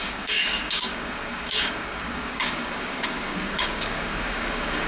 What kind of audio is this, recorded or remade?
remade